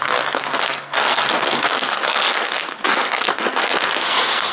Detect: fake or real fake